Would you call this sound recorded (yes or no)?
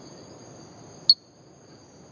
yes